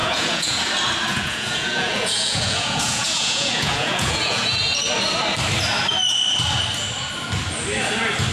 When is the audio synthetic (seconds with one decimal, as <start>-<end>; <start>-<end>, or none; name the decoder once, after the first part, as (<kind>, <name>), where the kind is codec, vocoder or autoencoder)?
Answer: 0.0-0.7 (vocoder, Vocos); 1.1-4.9